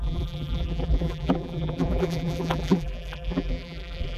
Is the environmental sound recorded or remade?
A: remade